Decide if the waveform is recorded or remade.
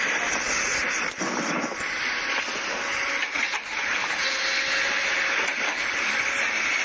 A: recorded